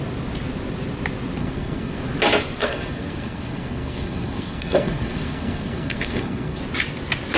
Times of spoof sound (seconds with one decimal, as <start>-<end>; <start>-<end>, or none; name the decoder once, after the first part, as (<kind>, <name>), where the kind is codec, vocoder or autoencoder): 1.4-2.0 (codec, SNAC); 2.6-6.6